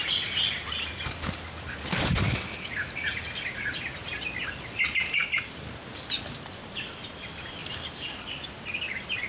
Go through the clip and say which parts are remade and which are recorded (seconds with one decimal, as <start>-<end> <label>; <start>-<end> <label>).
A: 0.0-9.3 recorded